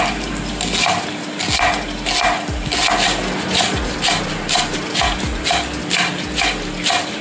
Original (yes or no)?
yes